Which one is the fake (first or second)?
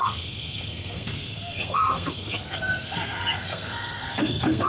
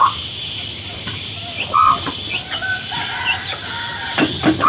first